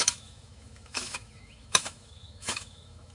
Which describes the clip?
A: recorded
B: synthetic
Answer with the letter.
B